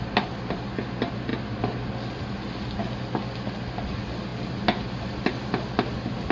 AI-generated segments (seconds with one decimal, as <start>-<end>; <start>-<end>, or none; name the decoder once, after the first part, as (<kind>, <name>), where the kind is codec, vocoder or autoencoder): none